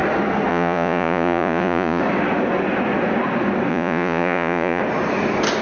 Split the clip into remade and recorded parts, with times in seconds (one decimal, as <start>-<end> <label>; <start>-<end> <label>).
0.0-0.5 recorded; 0.5-2.0 remade; 2.0-3.7 recorded; 3.7-4.8 remade; 4.8-5.6 recorded